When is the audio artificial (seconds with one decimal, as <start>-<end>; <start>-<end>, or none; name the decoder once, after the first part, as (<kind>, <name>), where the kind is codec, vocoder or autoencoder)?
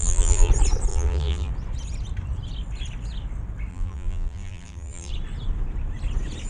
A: 0.0-0.5 (vocoder, BigVGAN v2); 0.9-1.5; 3.7-5.1